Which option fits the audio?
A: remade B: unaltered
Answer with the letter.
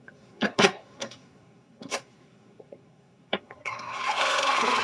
A